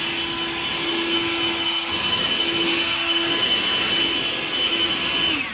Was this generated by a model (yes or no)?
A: no